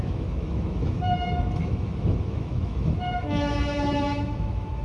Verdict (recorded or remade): remade